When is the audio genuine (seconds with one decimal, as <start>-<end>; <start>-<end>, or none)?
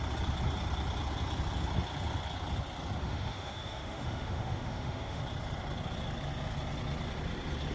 0.0-3.0; 5.2-7.7